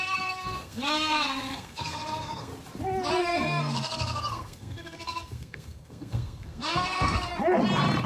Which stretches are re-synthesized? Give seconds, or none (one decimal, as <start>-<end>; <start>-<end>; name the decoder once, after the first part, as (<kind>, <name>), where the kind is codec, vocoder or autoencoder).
0.0-2.5 (codec, SNAC); 3.2-7.3